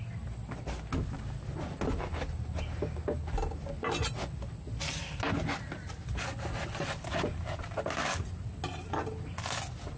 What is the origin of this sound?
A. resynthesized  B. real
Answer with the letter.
B